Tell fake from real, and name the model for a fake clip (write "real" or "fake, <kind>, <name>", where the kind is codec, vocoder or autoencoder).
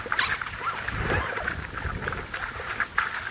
real